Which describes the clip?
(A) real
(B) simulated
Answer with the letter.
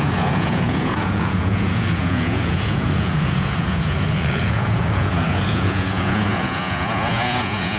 B